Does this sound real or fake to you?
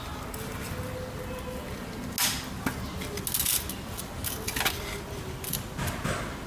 real